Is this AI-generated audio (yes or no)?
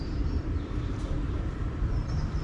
yes